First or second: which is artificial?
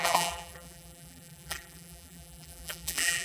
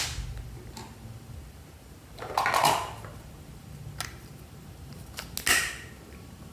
first